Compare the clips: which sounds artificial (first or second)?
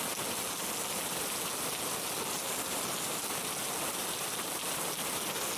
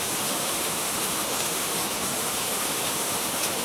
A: second